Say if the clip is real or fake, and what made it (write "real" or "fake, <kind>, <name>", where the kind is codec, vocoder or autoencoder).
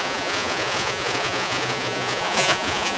fake, vocoder, Vocos